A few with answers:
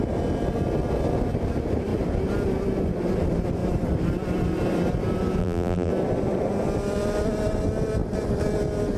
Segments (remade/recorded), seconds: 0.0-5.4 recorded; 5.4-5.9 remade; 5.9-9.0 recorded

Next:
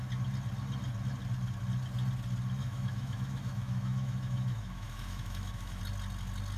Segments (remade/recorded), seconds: 0.0-2.6 recorded; 2.6-5.8 remade; 5.8-6.6 recorded

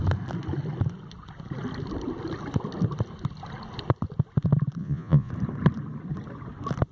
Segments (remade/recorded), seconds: 0.0-4.8 recorded; 4.8-5.3 remade; 5.3-6.9 recorded

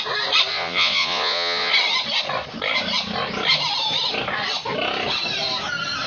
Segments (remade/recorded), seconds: 0.0-0.5 recorded; 0.5-1.7 remade; 1.7-6.1 recorded

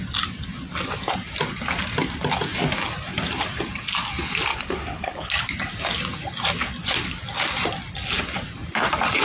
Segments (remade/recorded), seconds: 0.0-4.5 recorded; 4.5-5.3 remade; 5.3-9.2 recorded

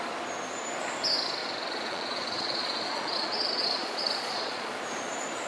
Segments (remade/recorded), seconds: 0.0-1.4 recorded; 1.4-4.7 remade; 4.7-5.5 recorded